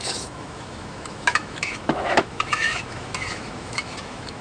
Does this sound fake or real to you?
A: fake